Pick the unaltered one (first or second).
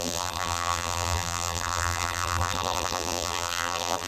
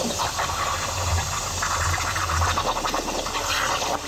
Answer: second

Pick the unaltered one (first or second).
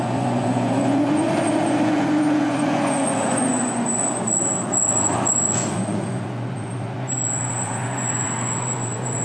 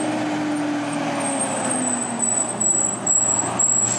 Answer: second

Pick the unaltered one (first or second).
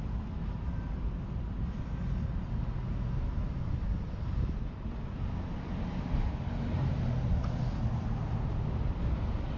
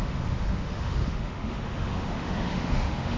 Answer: first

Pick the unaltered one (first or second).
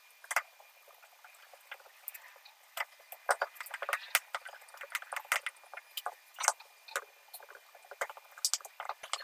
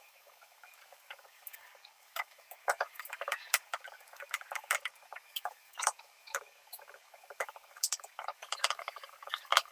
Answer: first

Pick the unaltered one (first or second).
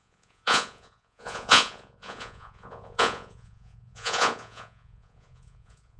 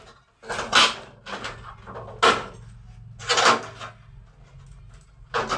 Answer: second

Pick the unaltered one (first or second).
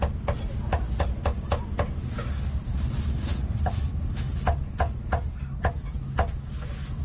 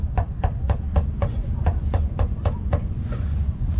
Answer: first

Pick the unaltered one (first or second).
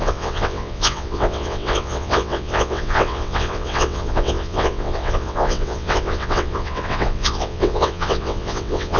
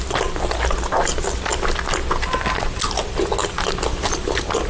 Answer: second